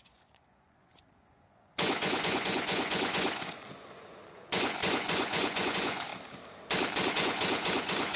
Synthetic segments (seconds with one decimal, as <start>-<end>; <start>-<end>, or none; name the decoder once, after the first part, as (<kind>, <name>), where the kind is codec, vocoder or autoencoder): 0.0-6.1 (vocoder, Vocos); 7.1-8.2